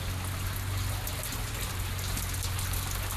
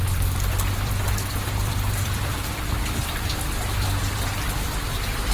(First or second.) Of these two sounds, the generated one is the second